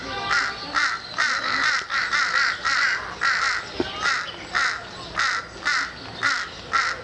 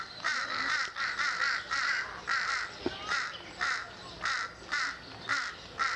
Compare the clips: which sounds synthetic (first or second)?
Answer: second